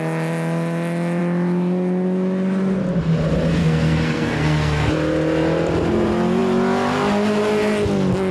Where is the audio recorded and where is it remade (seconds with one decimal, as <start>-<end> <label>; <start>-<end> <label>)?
0.0-3.6 recorded; 3.6-4.9 remade; 4.9-8.3 recorded